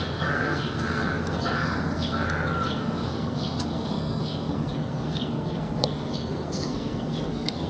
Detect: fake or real fake